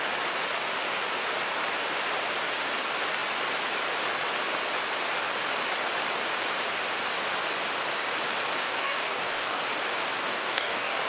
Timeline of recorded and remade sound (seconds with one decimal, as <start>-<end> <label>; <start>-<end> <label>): 0.0-8.6 recorded; 8.6-9.6 remade; 9.6-10.2 recorded; 10.2-11.1 remade